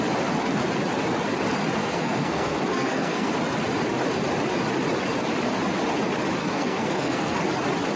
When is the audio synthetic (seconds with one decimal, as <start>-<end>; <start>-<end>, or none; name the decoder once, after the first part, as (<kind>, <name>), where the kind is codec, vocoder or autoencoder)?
1.8-3.3 (codec, SNAC); 6.4-7.4